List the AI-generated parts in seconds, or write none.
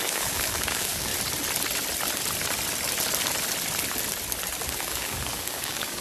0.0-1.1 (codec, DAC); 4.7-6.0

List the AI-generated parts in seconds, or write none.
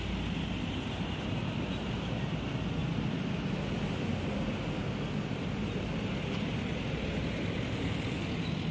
none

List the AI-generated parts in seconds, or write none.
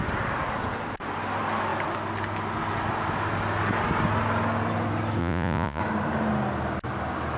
5.2-5.8 (vocoder, Vocos)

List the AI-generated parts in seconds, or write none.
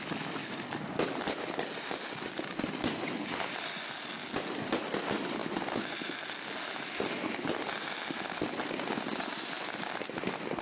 none